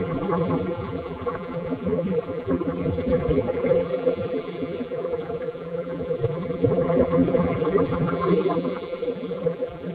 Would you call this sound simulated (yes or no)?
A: yes